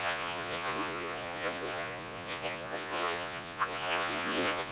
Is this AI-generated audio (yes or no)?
yes